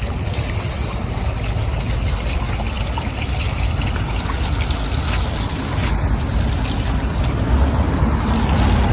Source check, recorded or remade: recorded